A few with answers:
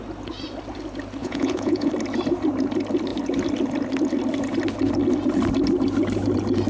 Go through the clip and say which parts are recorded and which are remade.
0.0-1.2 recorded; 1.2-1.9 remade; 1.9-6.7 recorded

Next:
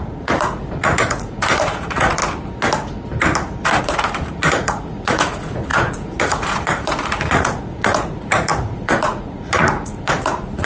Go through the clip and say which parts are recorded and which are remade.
0.0-2.2 remade; 2.2-3.8 recorded; 3.8-10.7 remade

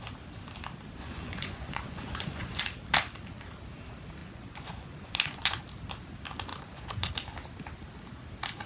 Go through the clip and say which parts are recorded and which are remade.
0.0-1.0 recorded; 1.0-2.6 remade; 2.6-4.2 recorded; 4.2-5.6 remade; 5.6-6.5 recorded; 6.5-7.1 remade; 7.1-8.7 recorded

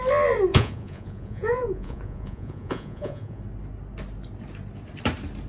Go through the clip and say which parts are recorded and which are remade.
0.0-0.5 recorded; 0.5-3.4 remade; 3.4-5.5 recorded

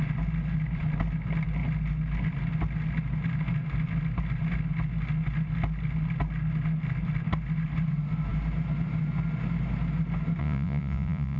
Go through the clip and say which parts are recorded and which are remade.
0.0-10.4 recorded; 10.4-11.4 remade

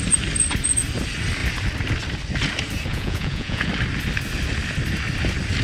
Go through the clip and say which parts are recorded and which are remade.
0.0-2.9 recorded; 2.9-3.7 remade; 3.7-5.6 recorded